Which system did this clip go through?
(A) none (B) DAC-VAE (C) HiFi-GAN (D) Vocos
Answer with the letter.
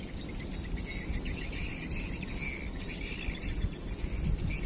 A